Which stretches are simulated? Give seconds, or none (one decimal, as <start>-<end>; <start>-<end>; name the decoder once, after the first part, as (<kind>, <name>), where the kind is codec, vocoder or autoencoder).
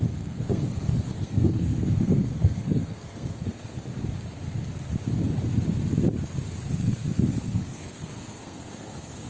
0.0-3.9 (codec, SNAC); 6.7-9.3